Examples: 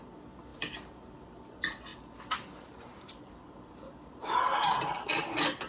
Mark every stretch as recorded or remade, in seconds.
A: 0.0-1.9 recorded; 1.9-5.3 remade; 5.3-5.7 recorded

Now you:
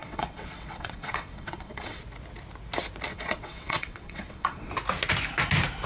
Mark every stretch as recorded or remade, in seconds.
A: 0.0-2.0 remade; 2.0-3.1 recorded; 3.1-4.7 remade; 4.7-5.9 recorded

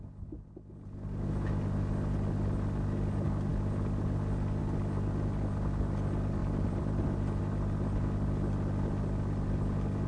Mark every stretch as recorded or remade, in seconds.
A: 0.0-6.4 recorded; 6.4-7.4 remade; 7.4-10.1 recorded

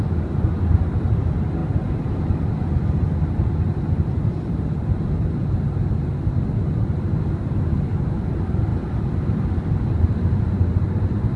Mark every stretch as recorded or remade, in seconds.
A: 0.0-11.4 remade

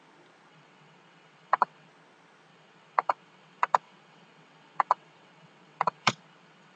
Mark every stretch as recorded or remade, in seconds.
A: 0.0-0.5 recorded; 0.5-1.9 remade; 1.9-2.5 recorded; 2.5-6.8 remade

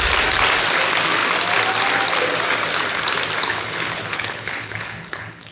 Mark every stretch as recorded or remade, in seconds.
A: 0.0-3.4 recorded; 3.4-5.5 remade

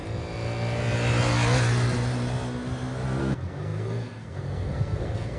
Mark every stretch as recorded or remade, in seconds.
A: 0.0-3.2 recorded; 3.2-5.4 remade